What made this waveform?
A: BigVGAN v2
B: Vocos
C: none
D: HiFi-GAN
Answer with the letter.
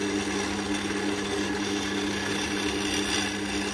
C